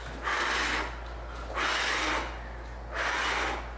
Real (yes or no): yes